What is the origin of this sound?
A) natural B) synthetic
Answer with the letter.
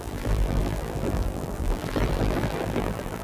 B